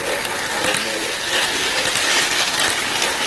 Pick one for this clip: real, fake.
real